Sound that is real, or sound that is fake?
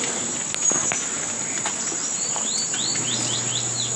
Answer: real